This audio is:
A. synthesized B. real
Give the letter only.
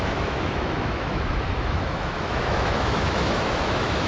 A